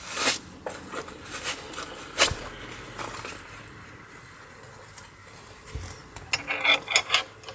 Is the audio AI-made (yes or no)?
no